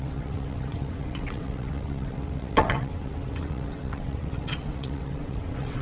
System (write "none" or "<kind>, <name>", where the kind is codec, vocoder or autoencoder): vocoder, WaveNeXt